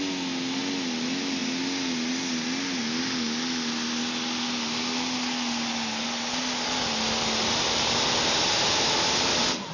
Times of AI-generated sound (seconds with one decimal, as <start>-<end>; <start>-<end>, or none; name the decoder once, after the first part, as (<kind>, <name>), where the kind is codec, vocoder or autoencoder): none